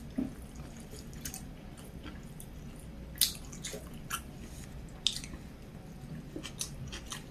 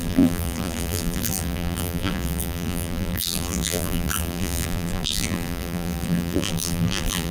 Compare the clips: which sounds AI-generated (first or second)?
second